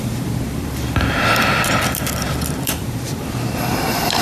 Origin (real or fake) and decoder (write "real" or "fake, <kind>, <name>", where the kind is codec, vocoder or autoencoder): fake, vocoder, BigVGAN v2